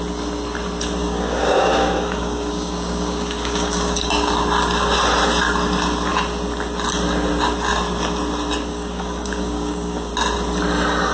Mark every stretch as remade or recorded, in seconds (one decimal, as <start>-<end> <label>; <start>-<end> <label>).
0.0-1.0 recorded; 1.0-4.3 remade; 4.3-8.7 recorded; 8.7-10.1 remade; 10.1-11.1 recorded